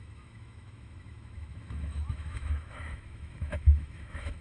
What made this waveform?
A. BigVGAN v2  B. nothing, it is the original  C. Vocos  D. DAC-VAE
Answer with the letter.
D